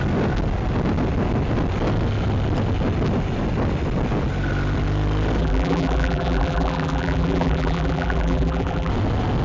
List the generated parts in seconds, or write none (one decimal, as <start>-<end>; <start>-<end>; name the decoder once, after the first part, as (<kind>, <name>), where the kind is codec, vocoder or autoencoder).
5.4-8.9 (vocoder, BigVGAN v2)